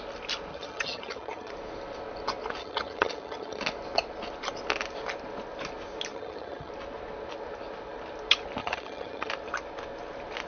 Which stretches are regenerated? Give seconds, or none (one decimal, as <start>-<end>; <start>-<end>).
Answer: 0.5-1.5; 2.6-3.6; 6.1-6.7; 8.6-9.3